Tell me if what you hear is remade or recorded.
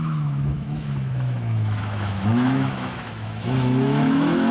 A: remade